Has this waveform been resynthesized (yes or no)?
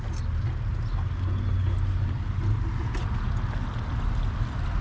no